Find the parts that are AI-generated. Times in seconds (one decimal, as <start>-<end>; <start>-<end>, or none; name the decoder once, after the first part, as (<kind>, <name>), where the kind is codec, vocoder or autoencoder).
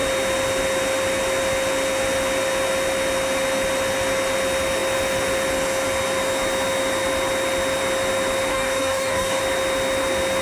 8.5-9.4 (codec, DAC)